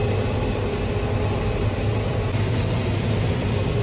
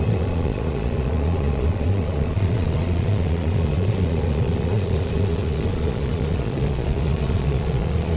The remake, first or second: second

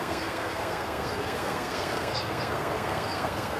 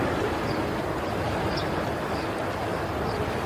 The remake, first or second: first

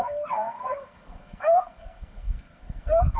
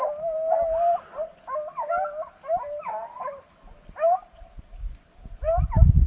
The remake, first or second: first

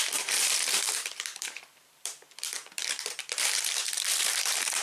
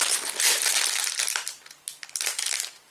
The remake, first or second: first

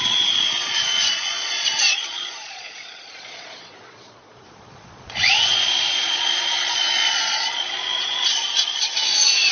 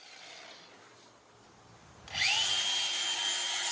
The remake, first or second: first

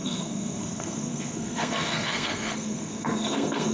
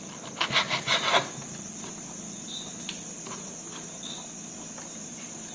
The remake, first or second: first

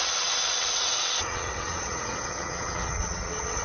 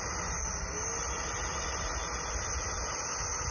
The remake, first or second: first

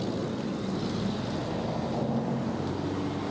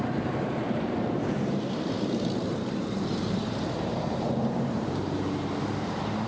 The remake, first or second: second